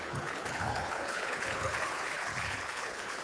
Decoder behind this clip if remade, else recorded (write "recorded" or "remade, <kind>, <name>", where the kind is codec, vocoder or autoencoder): remade, codec, HILCodec